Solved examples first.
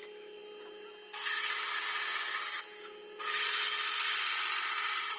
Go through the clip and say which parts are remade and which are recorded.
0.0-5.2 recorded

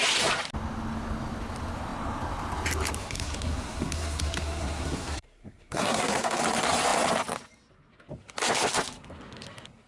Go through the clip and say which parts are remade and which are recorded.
0.0-3.0 recorded; 3.0-6.4 remade; 6.4-9.9 recorded

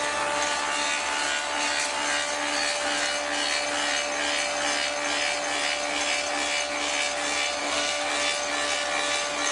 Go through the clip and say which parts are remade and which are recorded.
0.0-7.6 recorded; 7.6-8.1 remade; 8.1-9.5 recorded

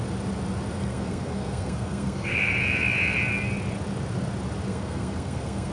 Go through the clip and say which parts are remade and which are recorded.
0.0-0.7 recorded; 0.7-2.5 remade; 2.5-4.7 recorded; 4.7-5.7 remade

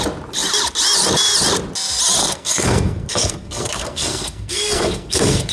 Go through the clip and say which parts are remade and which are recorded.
0.0-2.2 recorded; 2.2-5.5 remade

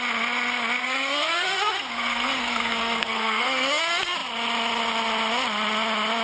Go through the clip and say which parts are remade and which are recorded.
0.0-0.8 recorded; 0.8-3.8 remade; 3.8-6.2 recorded

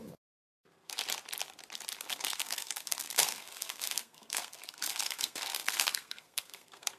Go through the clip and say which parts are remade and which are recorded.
0.0-1.0 remade; 1.0-2.1 recorded; 2.1-7.0 remade

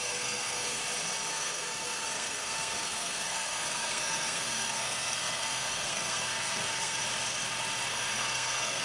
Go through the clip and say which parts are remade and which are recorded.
0.0-0.8 remade; 0.8-1.3 recorded; 1.3-7.0 remade; 7.0-7.9 recorded; 7.9-8.8 remade